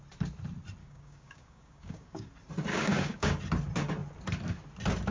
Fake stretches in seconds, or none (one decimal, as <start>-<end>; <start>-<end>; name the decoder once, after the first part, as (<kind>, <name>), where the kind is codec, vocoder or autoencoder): 0.8-2.3 (codec, DAC); 2.7-3.4